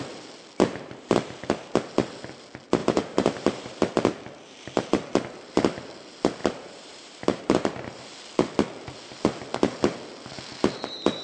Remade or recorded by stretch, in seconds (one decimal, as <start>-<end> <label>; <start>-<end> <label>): 0.0-2.8 recorded; 2.8-3.9 remade; 3.9-6.4 recorded; 6.4-8.0 remade; 8.0-11.2 recorded